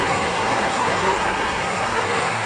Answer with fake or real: fake